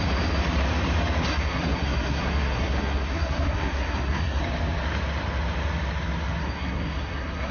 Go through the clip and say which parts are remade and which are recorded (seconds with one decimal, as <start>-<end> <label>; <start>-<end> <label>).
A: 0.0-1.3 recorded; 1.3-4.4 remade; 4.4-6.4 recorded; 6.4-7.5 remade

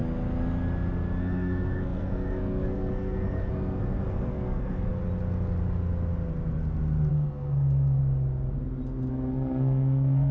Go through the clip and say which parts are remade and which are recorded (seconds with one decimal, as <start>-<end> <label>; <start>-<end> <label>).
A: 0.0-1.2 recorded; 1.2-4.9 remade; 4.9-7.1 recorded; 7.1-8.0 remade; 8.0-9.1 recorded; 9.1-10.3 remade

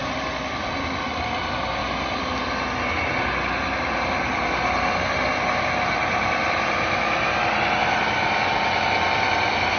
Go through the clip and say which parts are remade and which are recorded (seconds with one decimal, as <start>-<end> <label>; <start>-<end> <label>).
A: 0.0-9.8 recorded